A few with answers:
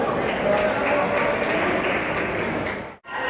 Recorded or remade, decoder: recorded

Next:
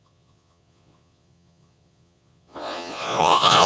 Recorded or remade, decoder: remade, vocoder, Vocos